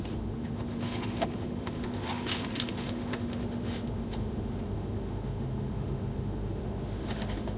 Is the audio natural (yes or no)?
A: no